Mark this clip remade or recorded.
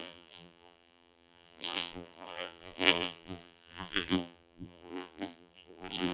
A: remade